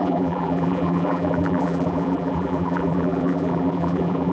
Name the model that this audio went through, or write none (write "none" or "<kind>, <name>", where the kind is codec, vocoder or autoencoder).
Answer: vocoder, BigVGAN v2